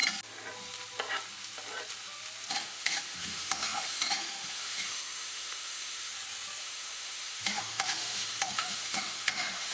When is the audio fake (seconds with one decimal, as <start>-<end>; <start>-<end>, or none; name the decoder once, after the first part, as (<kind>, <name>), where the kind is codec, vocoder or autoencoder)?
2.5-6.1 (autoencoder, DAC-VAE); 6.6-9.7